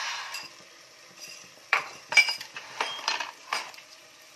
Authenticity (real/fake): fake